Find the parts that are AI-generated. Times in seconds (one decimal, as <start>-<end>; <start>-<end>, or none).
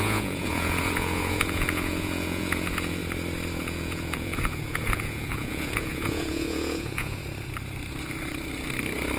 0.0-3.0; 3.6-7.2